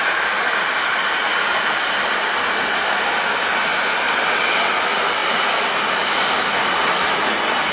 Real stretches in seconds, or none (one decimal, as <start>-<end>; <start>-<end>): 0.0-4.1; 4.7-7.7